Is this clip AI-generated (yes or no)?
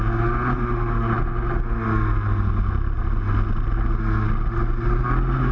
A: no